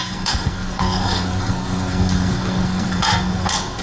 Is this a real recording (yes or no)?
no